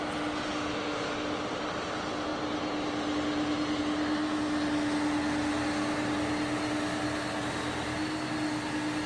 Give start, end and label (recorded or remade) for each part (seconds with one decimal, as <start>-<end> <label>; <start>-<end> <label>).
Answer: 0.0-9.1 recorded